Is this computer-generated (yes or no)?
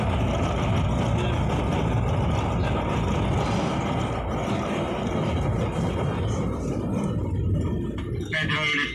no